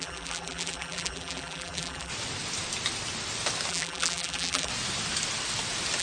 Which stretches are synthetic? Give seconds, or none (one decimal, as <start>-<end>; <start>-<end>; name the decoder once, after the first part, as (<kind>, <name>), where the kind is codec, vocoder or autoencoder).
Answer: 0.0-2.1 (vocoder, BigVGAN v2); 3.7-4.7

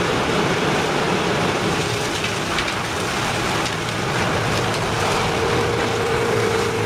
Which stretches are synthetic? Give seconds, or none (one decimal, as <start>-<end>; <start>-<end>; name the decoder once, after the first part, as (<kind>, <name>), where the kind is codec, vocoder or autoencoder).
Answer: 0.0-1.8 (vocoder, BigVGAN v2); 5.9-6.9

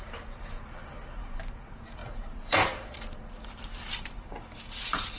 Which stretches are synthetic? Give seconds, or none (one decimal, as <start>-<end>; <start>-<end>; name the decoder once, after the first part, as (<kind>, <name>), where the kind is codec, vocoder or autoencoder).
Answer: 0.0-5.2 (vocoder, BigVGAN v2)

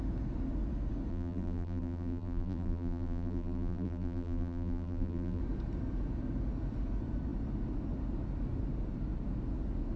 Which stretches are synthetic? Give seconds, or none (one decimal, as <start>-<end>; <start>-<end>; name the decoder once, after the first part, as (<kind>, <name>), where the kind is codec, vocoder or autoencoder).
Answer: 1.1-5.4 (vocoder, BigVGAN v2)

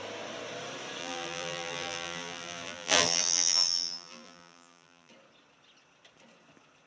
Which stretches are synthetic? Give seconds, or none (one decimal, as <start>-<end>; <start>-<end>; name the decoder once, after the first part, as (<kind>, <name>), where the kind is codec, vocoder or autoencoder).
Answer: 1.0-5.1 (vocoder, BigVGAN v2)

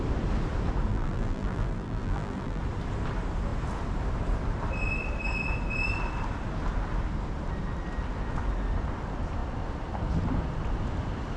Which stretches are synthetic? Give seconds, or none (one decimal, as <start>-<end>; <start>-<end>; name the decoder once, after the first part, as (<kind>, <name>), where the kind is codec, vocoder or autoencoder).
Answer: 0.9-2.6 (vocoder, BigVGAN v2)